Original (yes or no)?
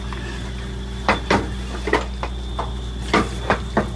yes